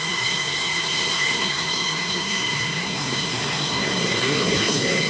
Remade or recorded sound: remade